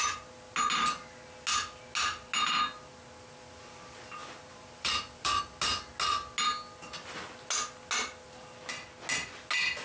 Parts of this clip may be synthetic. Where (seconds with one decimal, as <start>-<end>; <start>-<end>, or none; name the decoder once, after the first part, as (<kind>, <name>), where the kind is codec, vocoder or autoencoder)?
4.2-5.4 (vocoder, BigVGAN v2)